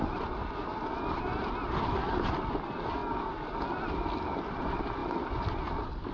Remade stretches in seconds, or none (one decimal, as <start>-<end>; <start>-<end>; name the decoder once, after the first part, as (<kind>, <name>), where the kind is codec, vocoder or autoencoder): none